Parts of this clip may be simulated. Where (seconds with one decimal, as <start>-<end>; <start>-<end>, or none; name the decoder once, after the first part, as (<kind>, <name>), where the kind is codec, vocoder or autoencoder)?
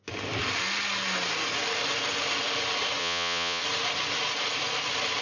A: 3.0-3.6 (vocoder, Vocos)